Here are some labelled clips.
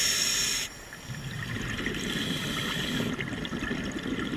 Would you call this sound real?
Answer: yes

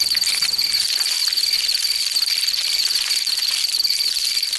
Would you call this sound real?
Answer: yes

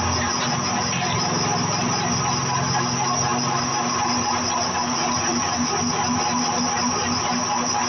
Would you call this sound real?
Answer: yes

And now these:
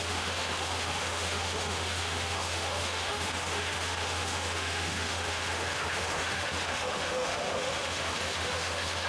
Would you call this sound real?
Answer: no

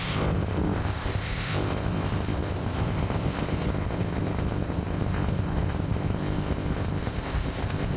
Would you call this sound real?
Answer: no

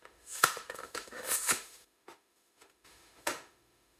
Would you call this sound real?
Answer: no